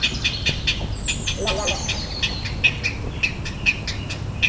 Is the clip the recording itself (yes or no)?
yes